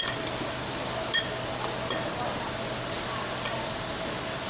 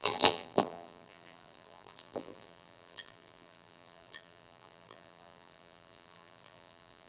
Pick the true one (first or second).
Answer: first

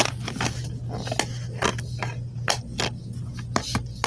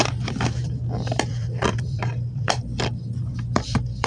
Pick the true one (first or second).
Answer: first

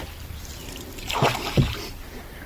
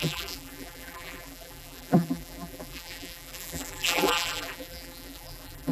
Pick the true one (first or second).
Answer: first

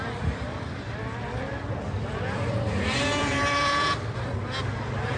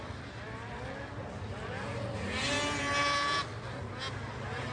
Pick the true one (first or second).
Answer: second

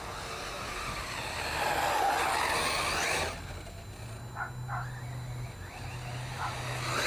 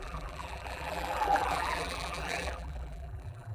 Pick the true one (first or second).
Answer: first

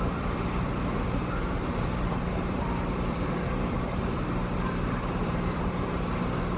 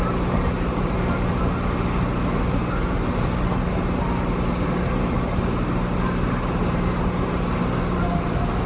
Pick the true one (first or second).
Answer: second